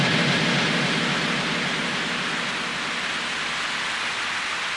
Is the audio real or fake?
real